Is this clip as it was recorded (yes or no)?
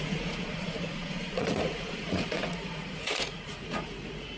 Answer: no